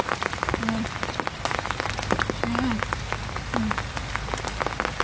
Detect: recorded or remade recorded